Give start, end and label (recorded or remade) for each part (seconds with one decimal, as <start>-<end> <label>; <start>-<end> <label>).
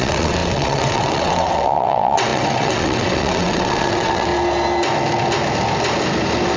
0.0-4.3 remade; 4.3-6.6 recorded